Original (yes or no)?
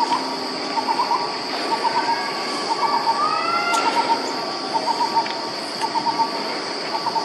yes